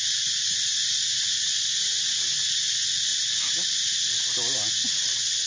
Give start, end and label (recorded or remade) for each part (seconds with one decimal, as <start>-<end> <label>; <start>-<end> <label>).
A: 0.0-4.8 recorded; 4.8-5.5 remade